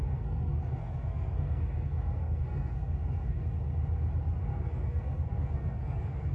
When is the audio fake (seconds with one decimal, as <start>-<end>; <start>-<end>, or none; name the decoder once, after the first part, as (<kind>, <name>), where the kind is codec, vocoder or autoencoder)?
0.0-3.6 (codec, SNAC); 4.4-6.3